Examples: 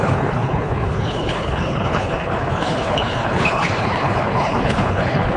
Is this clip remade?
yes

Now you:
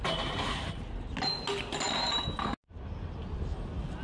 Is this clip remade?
no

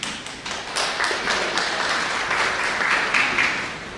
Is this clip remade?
no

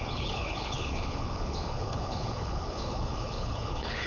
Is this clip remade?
yes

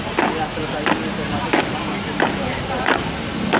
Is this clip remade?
no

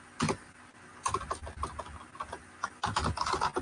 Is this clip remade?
no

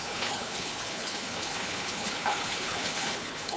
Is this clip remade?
yes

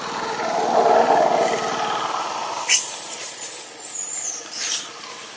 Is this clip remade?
no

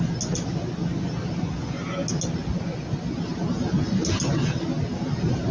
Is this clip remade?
no